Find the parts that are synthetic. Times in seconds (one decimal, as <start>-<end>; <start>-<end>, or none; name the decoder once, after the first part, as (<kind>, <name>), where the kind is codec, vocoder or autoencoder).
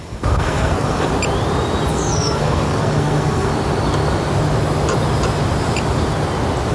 0.0-1.1 (codec, SNAC); 1.9-3.5